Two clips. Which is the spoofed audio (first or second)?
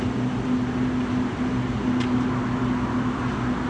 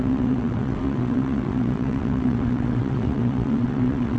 second